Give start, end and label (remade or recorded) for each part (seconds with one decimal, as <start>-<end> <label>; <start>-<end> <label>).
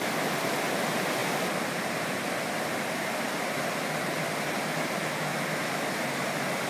0.0-1.2 recorded; 1.2-4.6 remade; 4.6-5.3 recorded; 5.3-6.1 remade; 6.1-6.7 recorded